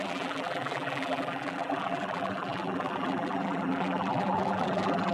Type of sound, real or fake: fake